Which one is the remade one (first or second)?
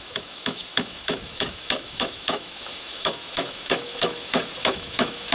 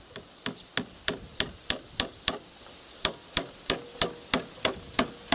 first